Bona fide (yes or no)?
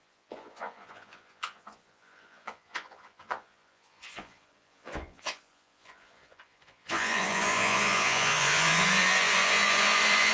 no